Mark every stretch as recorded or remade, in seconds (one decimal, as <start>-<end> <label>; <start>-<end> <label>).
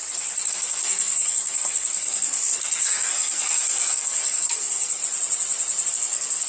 0.0-0.5 recorded; 0.5-5.0 remade; 5.0-5.9 recorded; 5.9-6.5 remade